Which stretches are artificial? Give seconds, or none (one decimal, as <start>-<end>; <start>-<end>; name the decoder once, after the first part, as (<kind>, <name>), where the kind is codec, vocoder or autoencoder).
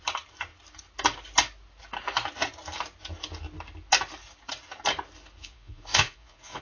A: 5.4-6.6 (vocoder, Vocos)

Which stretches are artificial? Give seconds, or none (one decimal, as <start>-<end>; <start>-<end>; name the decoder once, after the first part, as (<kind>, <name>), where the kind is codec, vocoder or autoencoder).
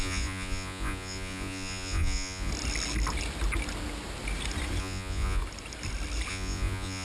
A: 0.0-2.5 (vocoder, Vocos); 4.8-5.4; 6.3-7.0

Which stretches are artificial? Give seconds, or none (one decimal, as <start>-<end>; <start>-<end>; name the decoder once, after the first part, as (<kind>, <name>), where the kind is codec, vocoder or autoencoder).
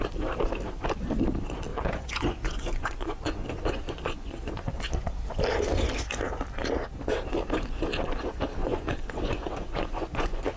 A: 1.7-4.7 (vocoder, Vocos); 8.6-10.6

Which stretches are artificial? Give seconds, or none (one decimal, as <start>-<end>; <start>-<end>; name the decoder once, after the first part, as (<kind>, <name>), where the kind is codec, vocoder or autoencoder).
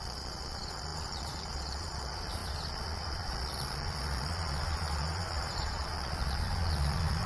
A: 0.0-7.3 (vocoder, Vocos)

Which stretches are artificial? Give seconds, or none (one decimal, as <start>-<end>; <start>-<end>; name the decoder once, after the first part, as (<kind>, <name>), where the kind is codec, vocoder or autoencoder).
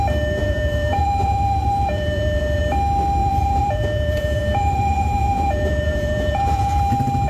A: 0.4-2.6 (vocoder, Vocos); 3.2-6.8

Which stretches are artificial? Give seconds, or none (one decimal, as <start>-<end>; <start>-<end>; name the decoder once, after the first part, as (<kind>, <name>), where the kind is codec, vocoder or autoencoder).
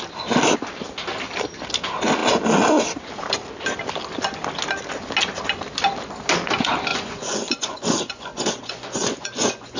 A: 6.9-9.8 (vocoder, Vocos)